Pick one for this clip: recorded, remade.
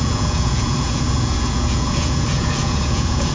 remade